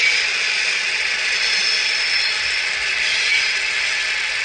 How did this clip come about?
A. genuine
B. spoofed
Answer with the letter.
A